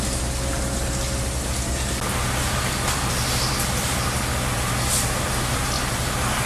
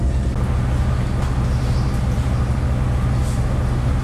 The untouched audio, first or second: second